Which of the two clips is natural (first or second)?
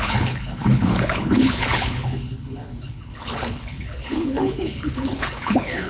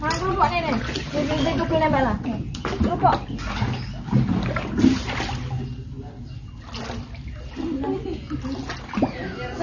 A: second